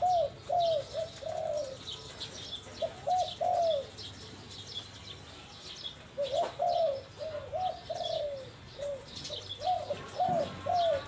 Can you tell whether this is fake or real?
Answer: real